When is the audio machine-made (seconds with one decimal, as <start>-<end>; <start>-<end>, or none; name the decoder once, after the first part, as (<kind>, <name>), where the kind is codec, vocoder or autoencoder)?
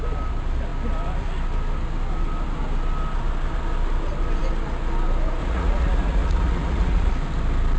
5.4-7.1 (vocoder, Vocos)